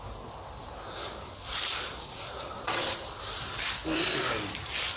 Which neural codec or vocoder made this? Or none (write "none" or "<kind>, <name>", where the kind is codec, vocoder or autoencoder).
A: none